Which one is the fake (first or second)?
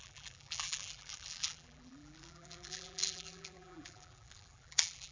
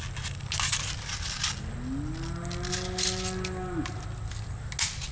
first